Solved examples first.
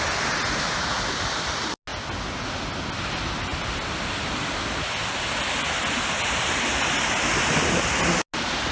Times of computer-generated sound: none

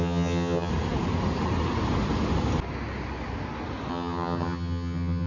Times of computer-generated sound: 0.0-0.7 (vocoder, HiFi-GAN); 3.9-5.3

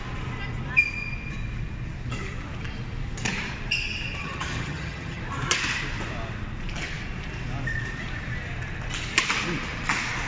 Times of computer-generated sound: 4.2-5.2 (vocoder, HiFi-GAN)